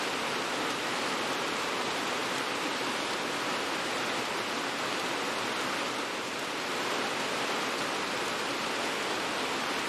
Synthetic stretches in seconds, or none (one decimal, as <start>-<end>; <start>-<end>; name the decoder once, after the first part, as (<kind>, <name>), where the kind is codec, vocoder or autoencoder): none